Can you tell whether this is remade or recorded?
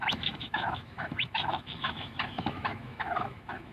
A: remade